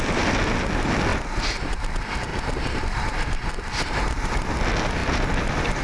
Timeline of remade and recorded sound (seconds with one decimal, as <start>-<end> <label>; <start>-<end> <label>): 0.0-1.1 recorded; 1.1-1.8 remade; 1.8-2.3 recorded; 2.3-3.4 remade; 3.4-5.8 recorded